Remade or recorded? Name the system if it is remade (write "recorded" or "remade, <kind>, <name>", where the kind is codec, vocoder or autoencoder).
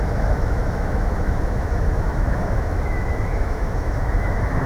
remade, autoencoder, DAC-VAE